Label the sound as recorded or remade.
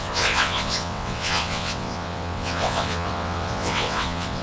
remade